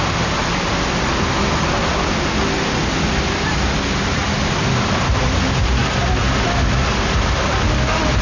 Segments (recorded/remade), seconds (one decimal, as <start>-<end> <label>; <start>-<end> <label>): 0.0-4.2 recorded; 4.2-5.2 remade; 5.2-8.2 recorded